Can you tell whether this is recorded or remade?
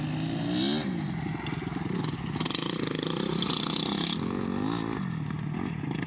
recorded